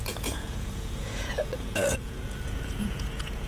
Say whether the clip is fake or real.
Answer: fake